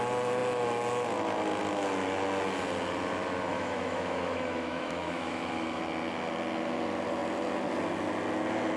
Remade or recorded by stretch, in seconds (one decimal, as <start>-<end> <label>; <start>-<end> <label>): 0.0-3.5 recorded; 3.5-5.8 remade; 5.8-8.8 recorded